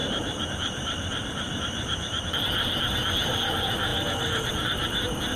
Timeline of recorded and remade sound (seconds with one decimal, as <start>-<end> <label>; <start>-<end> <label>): 0.0-2.3 remade; 2.3-3.9 recorded; 3.9-4.5 remade; 4.5-5.4 recorded